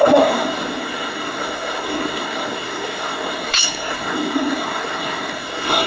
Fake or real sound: fake